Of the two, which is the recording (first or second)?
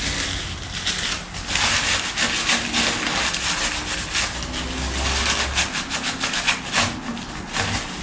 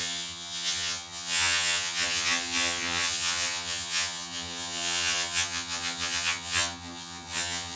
first